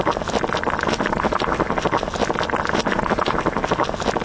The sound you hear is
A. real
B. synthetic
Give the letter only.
A